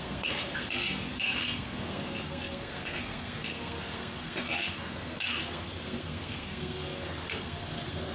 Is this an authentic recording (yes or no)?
no